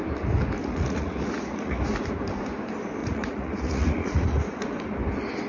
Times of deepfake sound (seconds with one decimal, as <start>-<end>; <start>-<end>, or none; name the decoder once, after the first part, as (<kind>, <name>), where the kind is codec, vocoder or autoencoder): 0.6-1.8 (vocoder, Vocos); 3.0-4.6

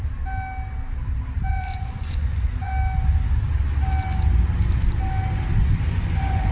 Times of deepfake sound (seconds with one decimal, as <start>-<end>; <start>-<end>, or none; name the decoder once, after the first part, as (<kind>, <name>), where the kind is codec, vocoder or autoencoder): 1.5-2.7 (vocoder, Vocos); 5.9-6.5

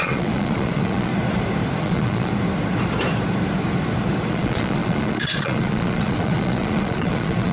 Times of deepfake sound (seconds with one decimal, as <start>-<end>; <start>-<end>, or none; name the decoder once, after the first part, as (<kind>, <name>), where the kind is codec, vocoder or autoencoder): 0.0-1.1 (vocoder, Vocos); 1.8-2.3; 4.3-7.5

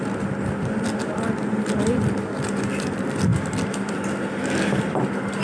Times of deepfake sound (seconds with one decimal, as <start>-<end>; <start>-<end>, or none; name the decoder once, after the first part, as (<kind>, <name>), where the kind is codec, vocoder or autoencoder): none

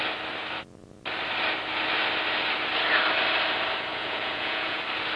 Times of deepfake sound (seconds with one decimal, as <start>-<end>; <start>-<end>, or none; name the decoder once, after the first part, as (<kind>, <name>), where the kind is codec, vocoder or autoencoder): 3.9-4.8 (vocoder, Vocos)

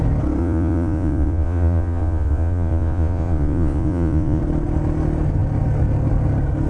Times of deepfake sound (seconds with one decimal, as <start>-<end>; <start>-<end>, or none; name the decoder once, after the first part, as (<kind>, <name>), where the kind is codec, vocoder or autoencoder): 0.4-4.4 (vocoder, Vocos)

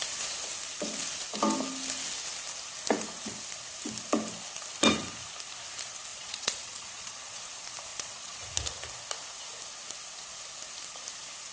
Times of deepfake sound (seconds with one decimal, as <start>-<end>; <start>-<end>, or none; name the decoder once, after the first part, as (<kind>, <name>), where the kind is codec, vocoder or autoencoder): 6.1-7.4 (vocoder, Vocos); 7.9-8.5